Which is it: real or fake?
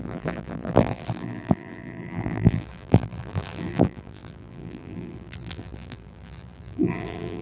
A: fake